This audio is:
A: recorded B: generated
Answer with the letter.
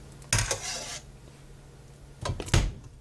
A